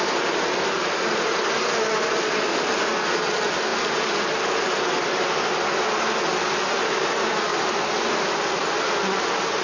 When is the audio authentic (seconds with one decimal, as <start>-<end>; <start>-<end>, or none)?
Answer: 0.0-9.6